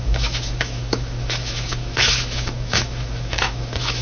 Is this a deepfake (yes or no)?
yes